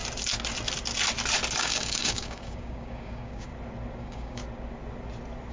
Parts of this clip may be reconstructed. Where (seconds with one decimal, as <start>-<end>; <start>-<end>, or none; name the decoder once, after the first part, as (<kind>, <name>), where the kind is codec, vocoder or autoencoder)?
1.6-3.5 (codec, DAC); 4.0-4.4